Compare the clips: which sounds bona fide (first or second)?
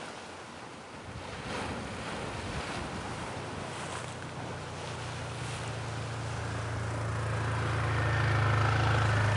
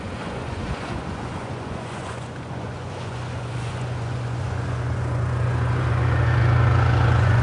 first